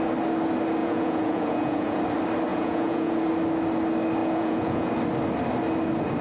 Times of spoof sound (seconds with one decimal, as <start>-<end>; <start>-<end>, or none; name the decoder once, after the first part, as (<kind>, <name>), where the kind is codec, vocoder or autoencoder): 0.8-2.0 (vocoder, Vocos); 2.5-3.3; 4.2-4.9